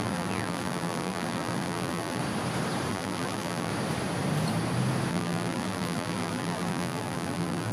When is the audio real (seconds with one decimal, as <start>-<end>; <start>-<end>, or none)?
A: 2.2-2.9; 3.7-5.1